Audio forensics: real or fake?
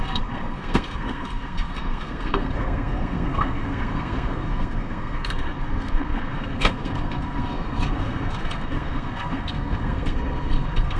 fake